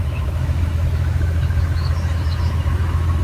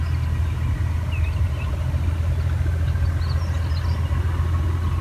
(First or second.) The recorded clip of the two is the second